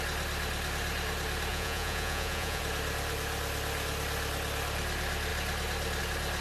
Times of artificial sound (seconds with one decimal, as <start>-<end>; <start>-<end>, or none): 1.5-2.6